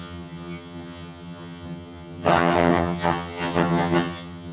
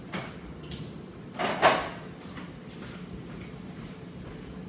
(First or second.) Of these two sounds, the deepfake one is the first